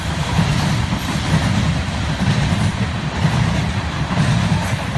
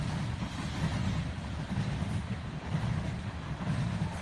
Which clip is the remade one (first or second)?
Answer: first